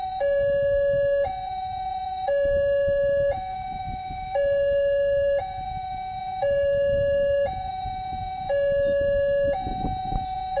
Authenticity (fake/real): fake